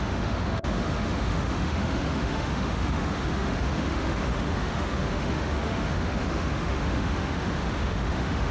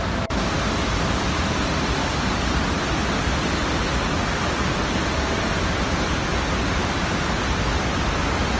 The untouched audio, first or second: second